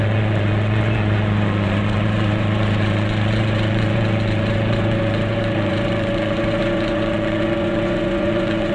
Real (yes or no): no